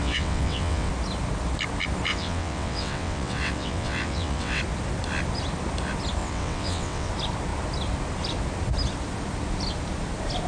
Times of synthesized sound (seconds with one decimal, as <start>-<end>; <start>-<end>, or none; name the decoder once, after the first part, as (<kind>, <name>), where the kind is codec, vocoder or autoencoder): 0.0-0.9 (vocoder, WaveNeXt); 2.1-4.6; 6.2-7.1